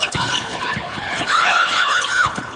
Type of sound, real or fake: fake